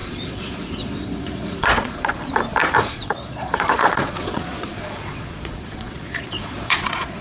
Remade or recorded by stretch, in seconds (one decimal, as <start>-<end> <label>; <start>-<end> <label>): 0.0-2.3 remade; 2.3-2.8 recorded; 2.8-7.2 remade